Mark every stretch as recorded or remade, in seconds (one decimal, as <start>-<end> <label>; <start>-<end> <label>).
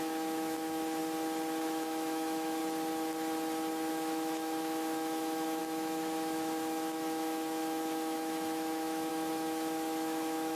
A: 0.0-1.0 remade; 1.0-1.6 recorded; 1.6-2.6 remade; 2.6-3.9 recorded; 3.9-10.6 remade